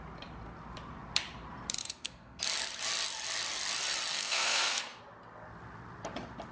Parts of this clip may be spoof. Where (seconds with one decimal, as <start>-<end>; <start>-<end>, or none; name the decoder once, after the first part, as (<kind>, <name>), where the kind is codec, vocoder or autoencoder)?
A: 1.8-2.4 (codec, SNAC); 4.1-5.0